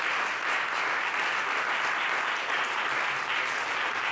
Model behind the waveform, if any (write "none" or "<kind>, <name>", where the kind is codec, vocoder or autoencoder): none